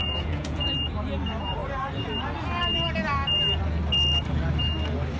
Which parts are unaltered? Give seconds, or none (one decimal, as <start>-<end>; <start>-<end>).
0.7-5.2